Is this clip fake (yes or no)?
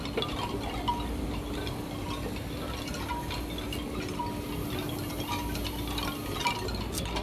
no